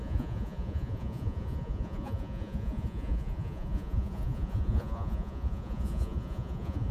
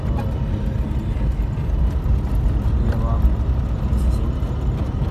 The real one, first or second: second